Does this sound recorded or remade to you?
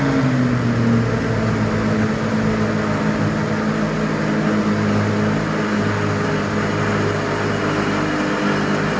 recorded